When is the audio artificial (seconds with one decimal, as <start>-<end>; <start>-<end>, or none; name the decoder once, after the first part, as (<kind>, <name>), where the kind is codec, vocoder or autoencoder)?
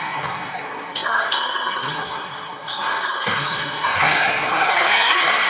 0.0-5.5 (codec, SNAC)